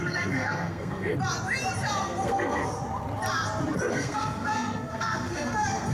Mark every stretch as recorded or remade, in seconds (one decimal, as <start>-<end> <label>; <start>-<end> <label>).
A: 0.0-1.1 remade; 1.1-2.0 recorded; 2.0-2.6 remade; 2.6-3.9 recorded; 3.9-5.9 remade